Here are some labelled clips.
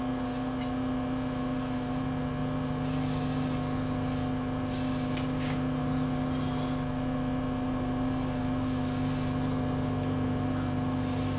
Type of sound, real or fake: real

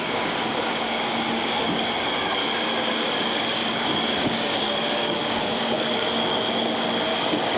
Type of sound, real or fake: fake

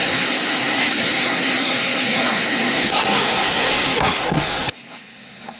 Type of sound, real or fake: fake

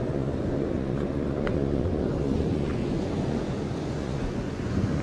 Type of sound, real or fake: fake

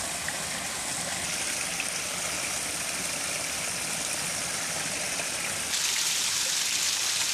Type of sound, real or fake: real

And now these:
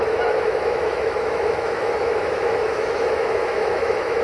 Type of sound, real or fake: fake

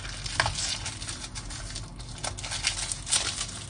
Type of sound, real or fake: real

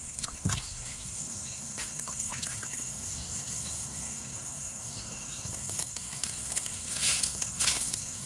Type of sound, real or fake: fake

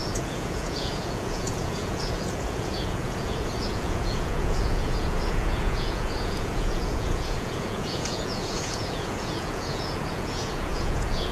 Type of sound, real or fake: fake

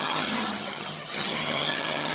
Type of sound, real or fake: fake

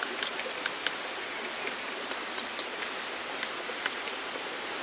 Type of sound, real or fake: real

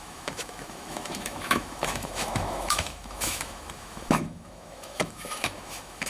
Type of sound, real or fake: fake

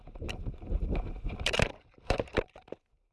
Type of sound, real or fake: fake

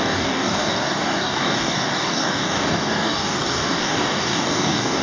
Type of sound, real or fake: fake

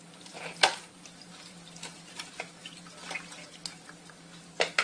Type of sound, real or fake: real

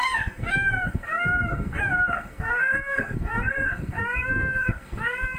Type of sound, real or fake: fake